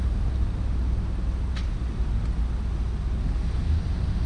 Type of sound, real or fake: real